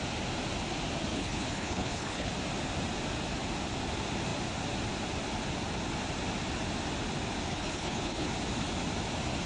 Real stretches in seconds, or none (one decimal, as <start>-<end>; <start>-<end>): 0.0-1.1; 2.3-7.5; 8.3-9.5

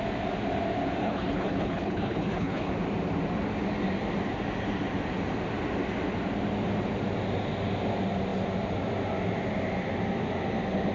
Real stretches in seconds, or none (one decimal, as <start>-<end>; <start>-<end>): 0.0-1.0; 2.7-10.9

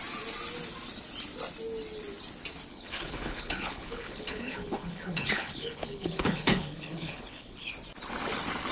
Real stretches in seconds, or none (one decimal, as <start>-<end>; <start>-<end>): 0.0-2.7; 7.7-8.7

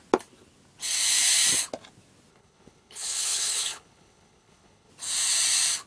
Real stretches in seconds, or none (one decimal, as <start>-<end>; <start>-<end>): 0.0-2.3; 4.9-5.9

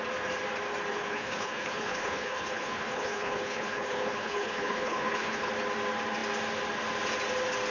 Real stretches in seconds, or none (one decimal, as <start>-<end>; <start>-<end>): 0.0-0.9; 5.5-7.7

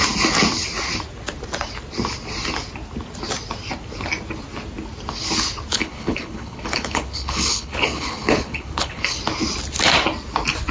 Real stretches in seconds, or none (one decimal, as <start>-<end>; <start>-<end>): 0.0-5.7; 9.2-10.7

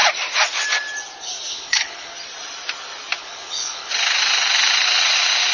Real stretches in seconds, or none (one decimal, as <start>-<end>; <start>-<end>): 0.0-1.5; 2.1-3.2; 3.9-5.5